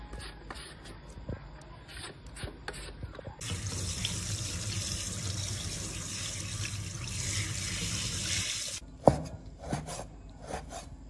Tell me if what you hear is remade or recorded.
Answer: recorded